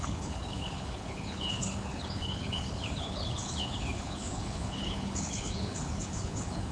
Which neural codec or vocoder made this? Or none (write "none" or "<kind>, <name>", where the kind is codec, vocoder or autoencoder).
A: codec, HILCodec